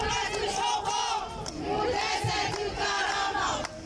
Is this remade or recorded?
recorded